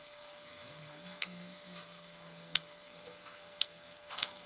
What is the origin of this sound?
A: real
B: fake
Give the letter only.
B